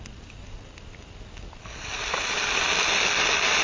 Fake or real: real